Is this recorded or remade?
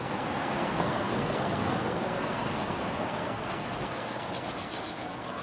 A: remade